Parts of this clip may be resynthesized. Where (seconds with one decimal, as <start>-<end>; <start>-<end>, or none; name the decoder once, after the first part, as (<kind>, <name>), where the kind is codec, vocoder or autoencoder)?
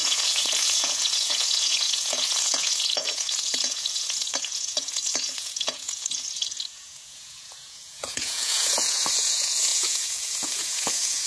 0.0-11.3 (vocoder, Vocos)